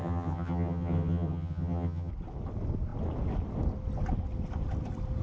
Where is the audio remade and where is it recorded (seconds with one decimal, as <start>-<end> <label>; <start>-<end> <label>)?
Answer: 0.0-2.1 remade; 2.1-5.2 recorded